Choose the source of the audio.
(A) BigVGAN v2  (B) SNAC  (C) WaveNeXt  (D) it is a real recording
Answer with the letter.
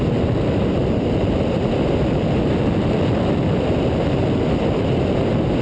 A